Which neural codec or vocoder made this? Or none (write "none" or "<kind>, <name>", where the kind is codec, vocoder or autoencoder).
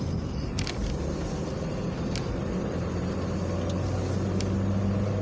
none